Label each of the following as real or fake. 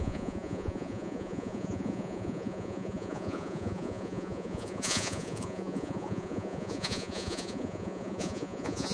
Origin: fake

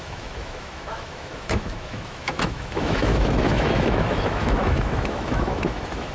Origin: fake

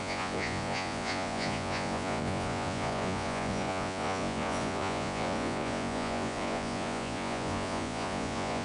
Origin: fake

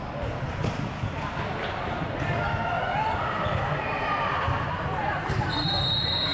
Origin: fake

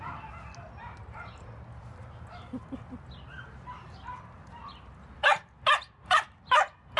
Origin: real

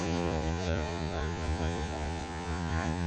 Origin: fake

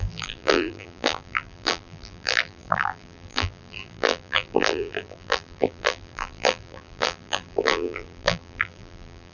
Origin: fake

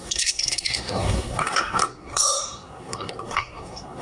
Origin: fake